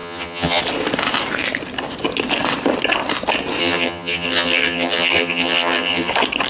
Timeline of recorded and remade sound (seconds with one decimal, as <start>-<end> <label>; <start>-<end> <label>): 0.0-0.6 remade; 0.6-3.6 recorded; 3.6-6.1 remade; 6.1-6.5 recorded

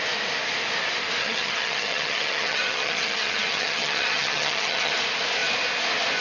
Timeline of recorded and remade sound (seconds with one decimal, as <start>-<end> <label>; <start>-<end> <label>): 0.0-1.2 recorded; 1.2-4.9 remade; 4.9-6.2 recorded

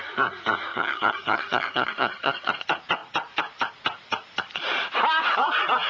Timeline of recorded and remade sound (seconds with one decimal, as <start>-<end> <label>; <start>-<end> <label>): 0.0-0.7 recorded; 0.7-2.5 remade; 2.5-5.9 recorded

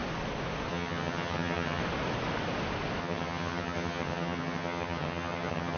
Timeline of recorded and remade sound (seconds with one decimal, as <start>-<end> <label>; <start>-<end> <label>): 0.0-0.7 recorded; 0.7-1.8 remade; 1.8-3.0 recorded; 3.0-5.8 remade

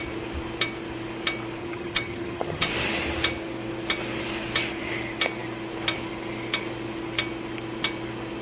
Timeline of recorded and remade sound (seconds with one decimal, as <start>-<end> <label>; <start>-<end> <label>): 0.0-1.6 recorded; 1.6-2.7 remade; 2.7-8.4 recorded

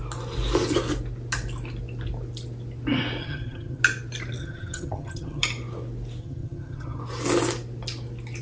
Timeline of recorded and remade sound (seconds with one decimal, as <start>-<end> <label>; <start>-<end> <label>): 0.0-3.2 recorded; 3.2-3.8 remade; 3.8-4.4 recorded; 4.4-5.4 remade; 5.4-6.2 recorded; 6.2-7.0 remade; 7.0-8.4 recorded

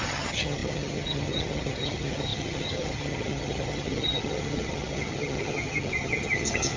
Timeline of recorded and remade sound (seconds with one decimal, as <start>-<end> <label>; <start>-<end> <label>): 0.0-6.8 remade

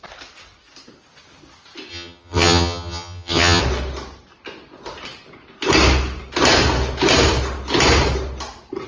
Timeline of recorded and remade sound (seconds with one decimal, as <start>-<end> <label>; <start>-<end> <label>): 0.0-1.9 recorded; 1.9-3.6 remade; 3.6-8.9 recorded